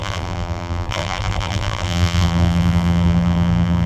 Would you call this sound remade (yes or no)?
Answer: yes